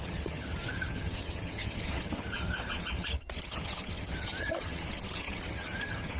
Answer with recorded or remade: remade